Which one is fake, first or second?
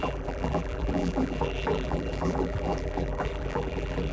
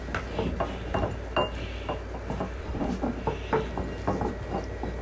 first